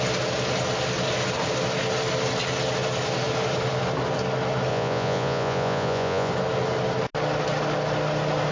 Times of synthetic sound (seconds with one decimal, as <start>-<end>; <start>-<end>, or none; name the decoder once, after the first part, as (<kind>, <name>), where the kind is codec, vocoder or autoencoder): 4.7-6.3 (vocoder, Vocos)